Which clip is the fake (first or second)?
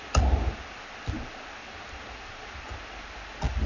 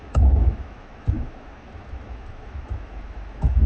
second